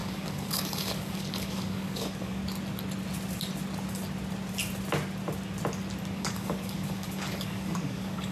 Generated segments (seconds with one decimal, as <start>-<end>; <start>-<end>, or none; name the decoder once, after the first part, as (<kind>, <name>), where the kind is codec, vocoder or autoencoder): 0.0-2.4 (codec, DAC); 6.1-8.3